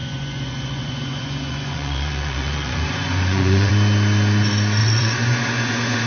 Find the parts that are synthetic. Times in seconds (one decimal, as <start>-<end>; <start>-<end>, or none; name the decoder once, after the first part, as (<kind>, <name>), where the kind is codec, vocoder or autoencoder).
0.0-3.7 (vocoder, Vocos); 4.8-6.1